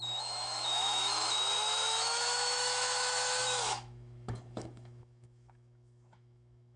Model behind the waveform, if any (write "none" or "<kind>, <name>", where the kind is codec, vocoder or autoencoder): autoencoder, DAC-VAE